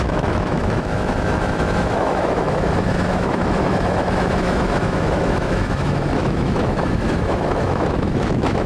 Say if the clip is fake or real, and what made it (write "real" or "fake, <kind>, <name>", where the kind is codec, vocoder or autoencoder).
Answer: fake, autoencoder, DAC-VAE